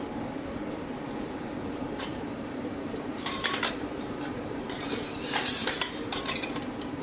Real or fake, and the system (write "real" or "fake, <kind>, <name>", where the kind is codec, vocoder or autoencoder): fake, vocoder, BigVGAN v2